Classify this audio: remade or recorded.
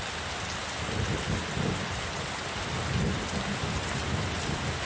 recorded